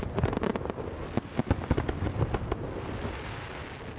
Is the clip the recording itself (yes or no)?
yes